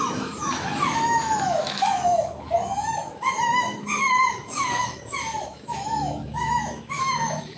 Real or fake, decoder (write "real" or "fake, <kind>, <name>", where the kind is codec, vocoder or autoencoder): fake, autoencoder, DAC-VAE